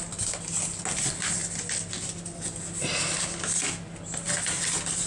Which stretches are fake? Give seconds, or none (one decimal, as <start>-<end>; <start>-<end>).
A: none